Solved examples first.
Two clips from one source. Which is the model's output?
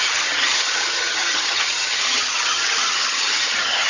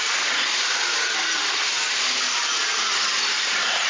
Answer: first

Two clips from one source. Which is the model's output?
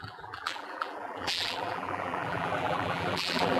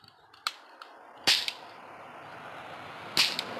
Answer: first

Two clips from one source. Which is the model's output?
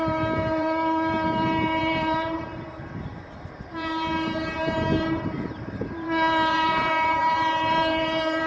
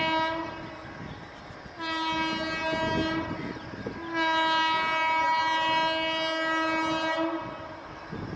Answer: first